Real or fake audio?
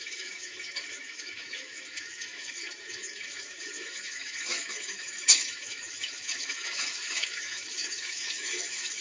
fake